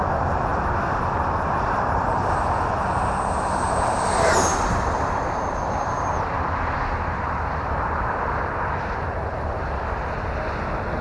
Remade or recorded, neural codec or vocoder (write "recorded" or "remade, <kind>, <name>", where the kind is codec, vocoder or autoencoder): recorded